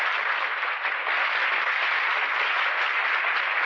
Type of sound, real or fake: real